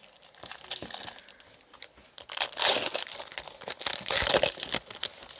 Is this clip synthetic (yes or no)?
no